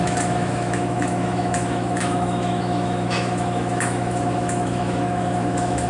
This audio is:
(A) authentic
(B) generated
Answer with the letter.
B